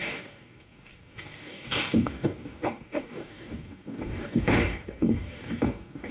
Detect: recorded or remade remade